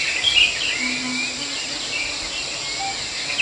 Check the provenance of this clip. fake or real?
real